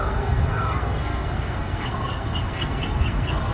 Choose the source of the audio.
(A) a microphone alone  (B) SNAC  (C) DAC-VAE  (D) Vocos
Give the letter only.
B